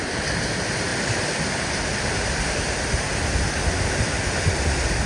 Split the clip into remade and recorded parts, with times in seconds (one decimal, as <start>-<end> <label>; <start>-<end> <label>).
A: 0.0-5.1 recorded